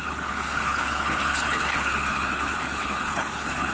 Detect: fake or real fake